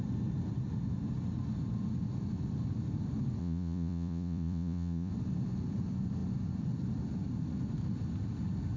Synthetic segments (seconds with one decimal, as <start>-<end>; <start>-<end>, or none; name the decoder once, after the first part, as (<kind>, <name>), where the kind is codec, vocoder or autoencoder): 3.4-5.1 (vocoder, Vocos)